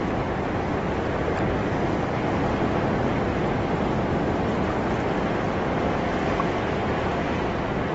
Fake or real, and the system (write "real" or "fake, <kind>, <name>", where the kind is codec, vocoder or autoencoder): real